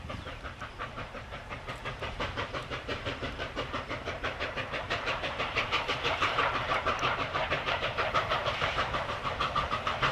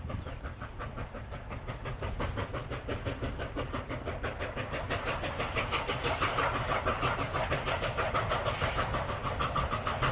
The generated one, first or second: first